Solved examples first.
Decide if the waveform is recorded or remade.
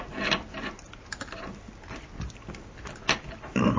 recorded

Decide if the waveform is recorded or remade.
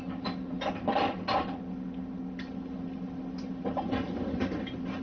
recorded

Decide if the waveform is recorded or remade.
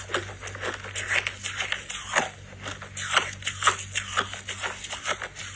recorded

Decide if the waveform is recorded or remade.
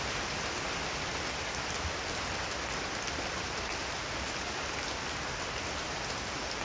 recorded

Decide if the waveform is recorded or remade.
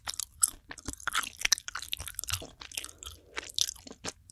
recorded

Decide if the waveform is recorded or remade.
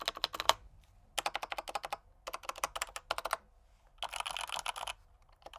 recorded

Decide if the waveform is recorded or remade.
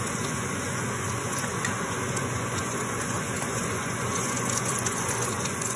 remade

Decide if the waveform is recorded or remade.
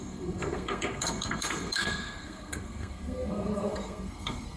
remade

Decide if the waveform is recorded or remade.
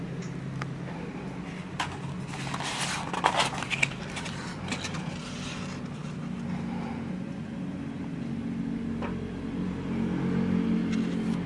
recorded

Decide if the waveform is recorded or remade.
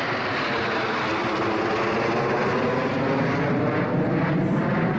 recorded